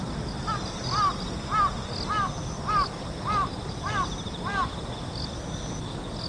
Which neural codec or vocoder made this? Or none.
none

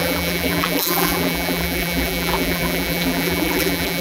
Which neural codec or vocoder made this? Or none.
vocoder, BigVGAN v2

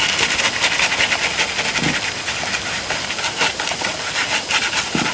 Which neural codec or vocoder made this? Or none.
none